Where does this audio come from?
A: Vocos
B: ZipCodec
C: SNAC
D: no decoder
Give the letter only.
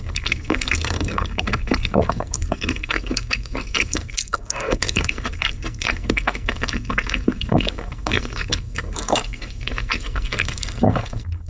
C